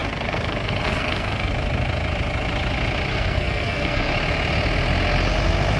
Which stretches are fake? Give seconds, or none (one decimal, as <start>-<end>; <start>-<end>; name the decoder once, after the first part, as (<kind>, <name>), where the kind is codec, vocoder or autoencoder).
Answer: 0.0-1.5 (codec, SNAC); 3.1-4.1